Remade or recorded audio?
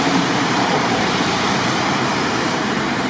remade